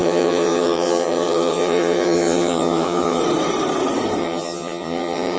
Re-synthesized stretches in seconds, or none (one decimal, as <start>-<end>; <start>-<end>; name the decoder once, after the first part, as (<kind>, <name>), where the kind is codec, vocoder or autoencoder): 0.0-3.2 (vocoder, HiFi-GAN); 4.2-5.4